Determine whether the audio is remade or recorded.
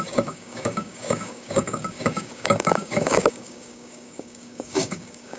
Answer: remade